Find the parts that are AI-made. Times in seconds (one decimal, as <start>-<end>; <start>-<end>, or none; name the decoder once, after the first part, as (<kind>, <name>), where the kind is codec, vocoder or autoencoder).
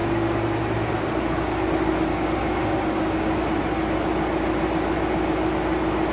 0.0-0.6 (codec, DAC); 2.1-3.4